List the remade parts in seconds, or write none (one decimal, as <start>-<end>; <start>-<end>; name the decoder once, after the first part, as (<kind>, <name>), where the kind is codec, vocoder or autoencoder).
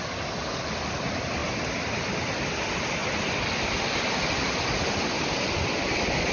none